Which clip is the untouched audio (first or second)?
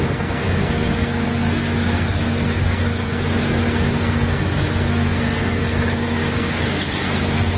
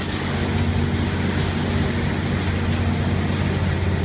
second